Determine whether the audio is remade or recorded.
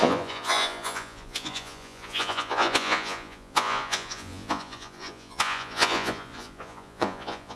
remade